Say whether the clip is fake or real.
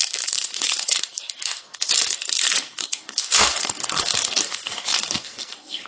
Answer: fake